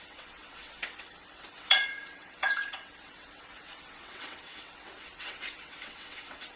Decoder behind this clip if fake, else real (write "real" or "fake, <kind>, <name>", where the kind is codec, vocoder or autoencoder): fake, vocoder, WaveNeXt